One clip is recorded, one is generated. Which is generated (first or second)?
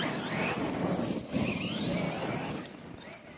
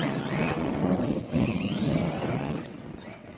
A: second